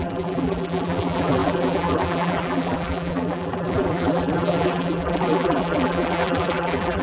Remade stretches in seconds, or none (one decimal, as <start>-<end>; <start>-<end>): 0.0-7.0